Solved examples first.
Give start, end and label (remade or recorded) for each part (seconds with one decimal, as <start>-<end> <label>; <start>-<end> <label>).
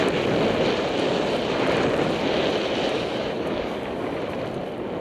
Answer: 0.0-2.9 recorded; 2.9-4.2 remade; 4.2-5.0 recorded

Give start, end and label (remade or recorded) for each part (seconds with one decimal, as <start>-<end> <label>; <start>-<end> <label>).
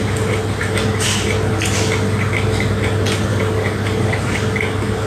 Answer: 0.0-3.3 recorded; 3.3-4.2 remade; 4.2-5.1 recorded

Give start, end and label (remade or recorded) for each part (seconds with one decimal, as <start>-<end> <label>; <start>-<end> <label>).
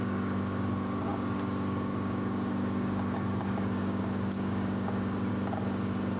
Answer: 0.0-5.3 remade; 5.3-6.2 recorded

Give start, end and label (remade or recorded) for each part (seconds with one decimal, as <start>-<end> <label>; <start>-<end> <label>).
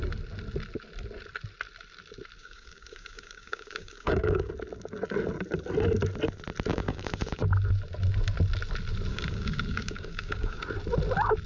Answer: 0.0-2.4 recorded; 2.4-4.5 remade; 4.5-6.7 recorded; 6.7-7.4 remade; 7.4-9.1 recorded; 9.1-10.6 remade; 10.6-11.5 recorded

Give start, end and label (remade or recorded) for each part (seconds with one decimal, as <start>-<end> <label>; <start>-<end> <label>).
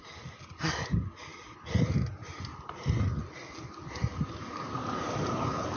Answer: 0.0-5.8 recorded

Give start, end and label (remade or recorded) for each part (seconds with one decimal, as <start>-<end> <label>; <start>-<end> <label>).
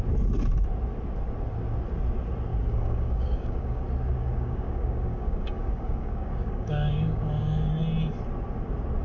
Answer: 0.0-2.5 recorded; 2.5-3.8 remade; 3.8-4.2 recorded; 4.2-7.7 remade; 7.7-9.0 recorded